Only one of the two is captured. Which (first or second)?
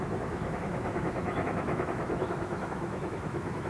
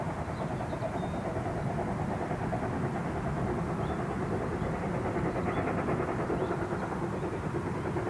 second